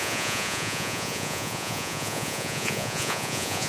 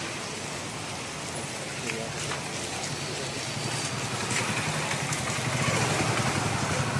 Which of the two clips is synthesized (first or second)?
first